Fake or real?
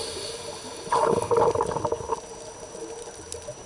real